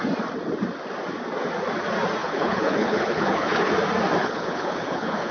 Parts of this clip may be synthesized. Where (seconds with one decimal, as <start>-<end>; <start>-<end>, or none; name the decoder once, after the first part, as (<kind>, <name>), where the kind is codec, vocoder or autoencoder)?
2.2-3.7 (codec, HILCodec); 4.2-5.3

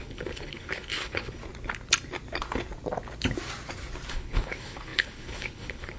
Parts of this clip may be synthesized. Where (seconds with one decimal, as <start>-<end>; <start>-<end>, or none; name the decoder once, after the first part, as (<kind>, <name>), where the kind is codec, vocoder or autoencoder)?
0.0-1.4 (codec, HILCodec); 4.1-6.0

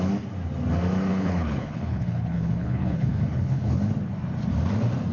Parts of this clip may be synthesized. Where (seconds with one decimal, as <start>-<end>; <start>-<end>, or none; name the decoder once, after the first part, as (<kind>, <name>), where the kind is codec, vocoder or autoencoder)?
1.1-3.8 (codec, HILCodec)